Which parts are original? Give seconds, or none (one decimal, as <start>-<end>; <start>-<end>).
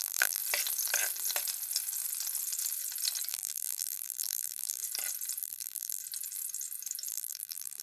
0.4-3.3; 4.8-5.4; 6.0-7.1